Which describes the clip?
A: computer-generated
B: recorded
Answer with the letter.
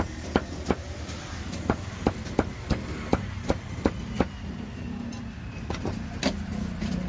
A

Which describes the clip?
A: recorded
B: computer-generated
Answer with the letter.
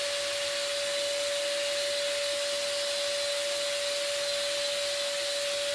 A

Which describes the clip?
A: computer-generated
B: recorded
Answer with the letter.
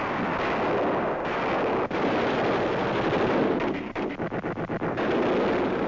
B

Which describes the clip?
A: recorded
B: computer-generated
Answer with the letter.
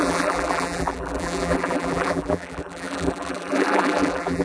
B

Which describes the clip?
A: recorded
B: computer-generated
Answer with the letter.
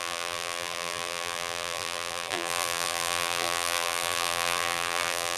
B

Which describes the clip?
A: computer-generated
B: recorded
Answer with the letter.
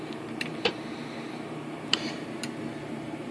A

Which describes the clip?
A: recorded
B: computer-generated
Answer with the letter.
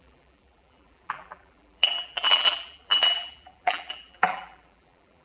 B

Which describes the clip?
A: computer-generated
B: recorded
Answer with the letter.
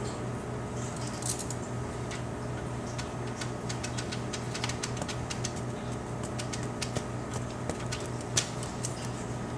B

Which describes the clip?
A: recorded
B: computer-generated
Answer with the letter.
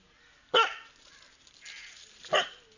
A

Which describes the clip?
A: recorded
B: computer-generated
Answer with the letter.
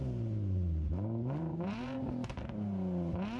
B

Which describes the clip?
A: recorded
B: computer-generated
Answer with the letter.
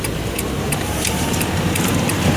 B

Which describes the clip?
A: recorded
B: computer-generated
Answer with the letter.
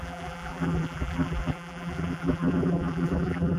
B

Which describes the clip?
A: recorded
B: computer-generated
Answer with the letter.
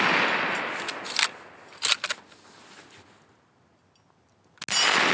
A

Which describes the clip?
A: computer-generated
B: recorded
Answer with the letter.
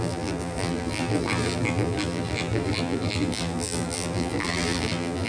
A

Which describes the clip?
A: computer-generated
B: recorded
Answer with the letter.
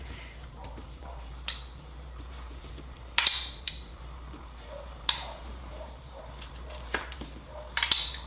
A